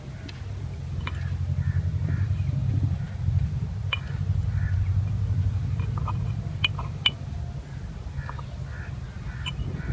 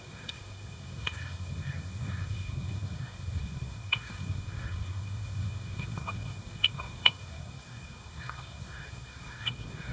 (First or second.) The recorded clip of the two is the first